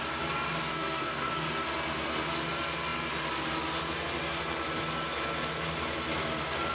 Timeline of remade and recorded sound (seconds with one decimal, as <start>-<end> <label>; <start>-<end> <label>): 0.0-0.7 recorded; 0.7-1.3 remade; 1.3-6.7 recorded